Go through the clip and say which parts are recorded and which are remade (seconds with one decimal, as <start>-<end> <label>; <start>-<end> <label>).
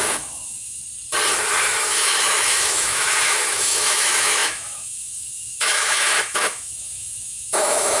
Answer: 0.0-0.8 remade; 0.8-1.7 recorded; 1.7-8.0 remade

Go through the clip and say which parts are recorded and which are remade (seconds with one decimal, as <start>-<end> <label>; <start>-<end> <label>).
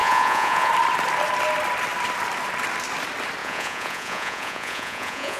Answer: 0.0-0.7 remade; 0.7-3.4 recorded; 3.4-5.4 remade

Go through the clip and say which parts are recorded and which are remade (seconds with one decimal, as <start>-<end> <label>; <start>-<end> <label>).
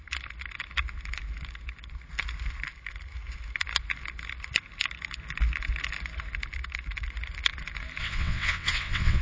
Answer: 0.0-8.0 recorded; 8.0-9.2 remade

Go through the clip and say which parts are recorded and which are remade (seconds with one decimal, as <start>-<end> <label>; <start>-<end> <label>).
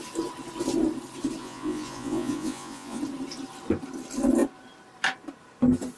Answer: 0.0-1.4 recorded; 1.4-3.0 remade; 3.0-6.0 recorded